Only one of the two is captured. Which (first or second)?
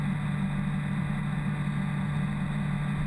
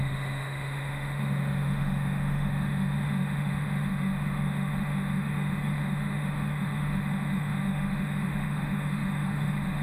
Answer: first